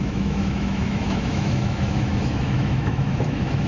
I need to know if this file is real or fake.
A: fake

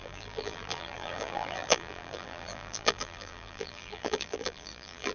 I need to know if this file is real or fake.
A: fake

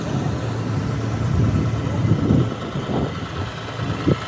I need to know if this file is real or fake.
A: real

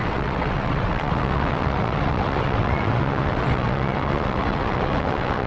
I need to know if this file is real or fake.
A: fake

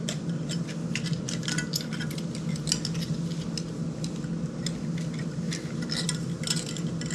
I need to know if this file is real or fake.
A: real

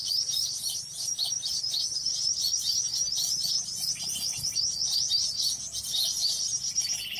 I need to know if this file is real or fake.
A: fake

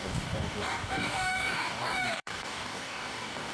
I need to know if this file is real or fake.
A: fake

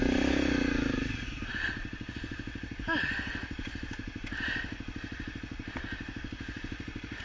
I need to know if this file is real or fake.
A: real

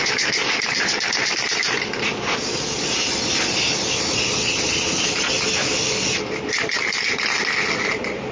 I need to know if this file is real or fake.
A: real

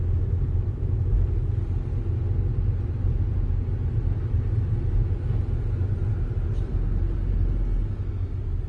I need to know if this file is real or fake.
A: real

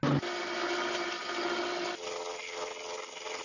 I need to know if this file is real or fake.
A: real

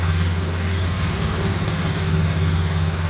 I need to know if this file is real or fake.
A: fake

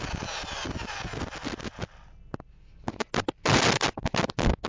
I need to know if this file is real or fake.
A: real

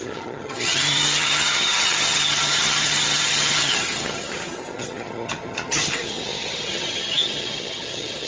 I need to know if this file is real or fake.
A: fake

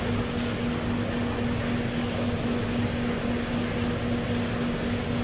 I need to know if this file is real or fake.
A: real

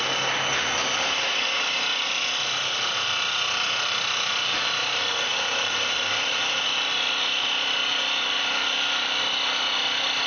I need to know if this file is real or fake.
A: real